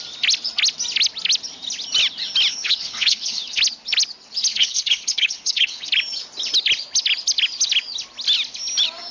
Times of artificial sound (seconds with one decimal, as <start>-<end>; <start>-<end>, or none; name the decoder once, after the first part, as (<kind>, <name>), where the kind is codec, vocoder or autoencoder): 2.5-3.6 (codec, HILCodec); 4.5-5.9